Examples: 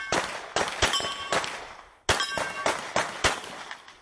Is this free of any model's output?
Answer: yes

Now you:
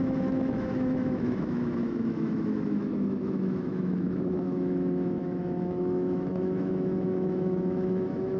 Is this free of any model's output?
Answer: no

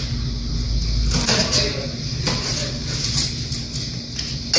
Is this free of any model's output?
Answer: yes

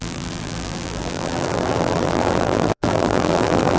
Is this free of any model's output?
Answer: no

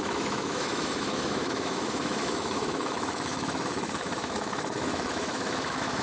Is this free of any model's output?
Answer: no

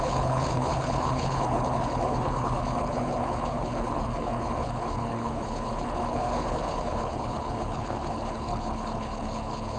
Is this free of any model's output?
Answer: no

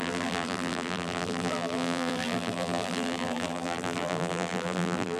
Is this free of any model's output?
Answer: no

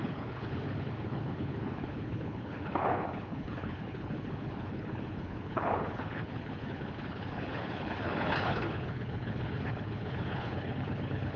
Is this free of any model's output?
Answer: no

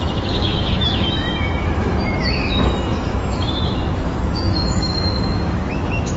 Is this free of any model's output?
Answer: no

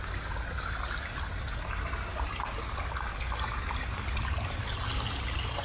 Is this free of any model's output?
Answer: yes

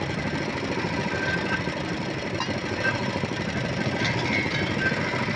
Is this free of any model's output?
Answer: yes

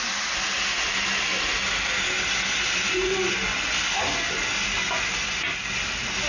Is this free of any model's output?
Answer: yes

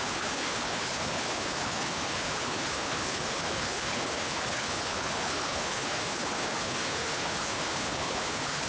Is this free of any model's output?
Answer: no